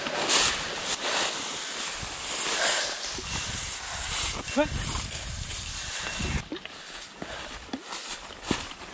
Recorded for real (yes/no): yes